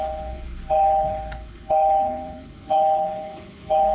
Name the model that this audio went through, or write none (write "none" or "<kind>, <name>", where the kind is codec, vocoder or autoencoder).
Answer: codec, HILCodec